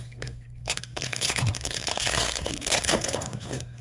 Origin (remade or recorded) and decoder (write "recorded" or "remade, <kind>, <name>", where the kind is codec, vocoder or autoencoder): remade, codec, SNAC